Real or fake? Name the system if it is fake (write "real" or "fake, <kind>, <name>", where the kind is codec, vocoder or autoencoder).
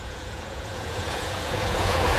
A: fake, vocoder, Vocos